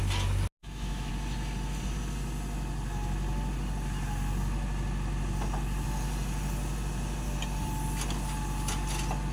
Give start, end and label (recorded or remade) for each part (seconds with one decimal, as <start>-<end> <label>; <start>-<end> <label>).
0.0-0.6 recorded; 0.6-1.1 remade; 1.1-9.3 recorded